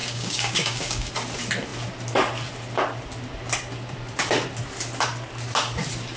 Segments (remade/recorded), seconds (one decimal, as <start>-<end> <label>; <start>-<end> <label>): 0.0-1.1 remade; 1.1-6.2 recorded